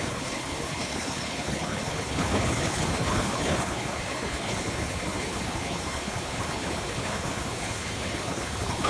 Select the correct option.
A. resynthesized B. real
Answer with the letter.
A